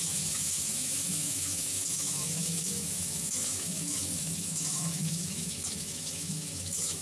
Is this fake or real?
fake